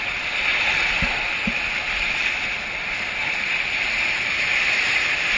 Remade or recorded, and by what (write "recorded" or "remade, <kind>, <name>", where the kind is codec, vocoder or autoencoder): recorded